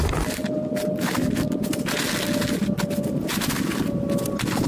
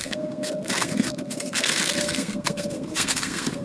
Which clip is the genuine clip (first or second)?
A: first